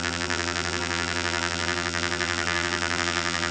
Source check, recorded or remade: remade